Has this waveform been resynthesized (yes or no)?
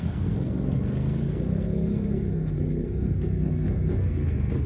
yes